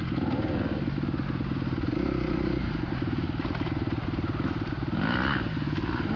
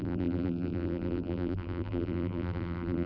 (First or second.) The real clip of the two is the first